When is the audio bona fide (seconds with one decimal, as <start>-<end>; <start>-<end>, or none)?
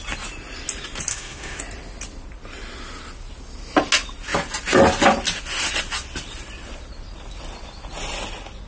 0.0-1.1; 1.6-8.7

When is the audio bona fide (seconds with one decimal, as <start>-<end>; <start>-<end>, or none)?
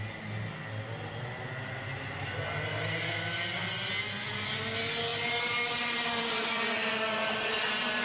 0.0-8.0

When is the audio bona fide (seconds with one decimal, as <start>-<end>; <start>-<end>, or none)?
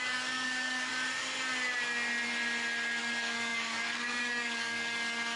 0.9-3.0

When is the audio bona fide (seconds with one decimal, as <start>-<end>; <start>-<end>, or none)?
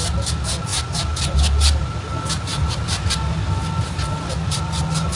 0.0-2.5; 4.6-5.2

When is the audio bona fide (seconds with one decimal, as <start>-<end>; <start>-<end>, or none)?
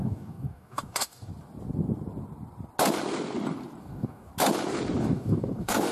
1.3-3.8; 4.3-5.0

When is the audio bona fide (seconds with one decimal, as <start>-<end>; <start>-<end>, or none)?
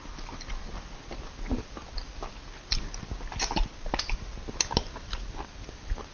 0.0-6.1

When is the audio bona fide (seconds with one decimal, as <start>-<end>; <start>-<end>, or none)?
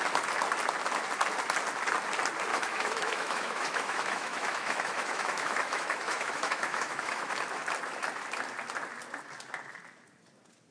0.0-2.5; 7.3-10.7